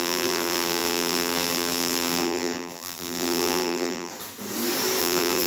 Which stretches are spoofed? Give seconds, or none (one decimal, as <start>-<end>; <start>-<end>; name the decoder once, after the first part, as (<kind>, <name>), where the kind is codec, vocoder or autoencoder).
0.0-4.1 (vocoder, BigVGAN v2); 5.0-5.5